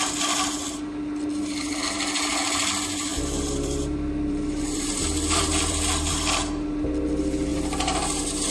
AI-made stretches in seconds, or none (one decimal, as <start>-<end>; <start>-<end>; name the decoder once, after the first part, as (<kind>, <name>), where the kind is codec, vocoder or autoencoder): 3.1-6.1 (vocoder, BigVGAN v2)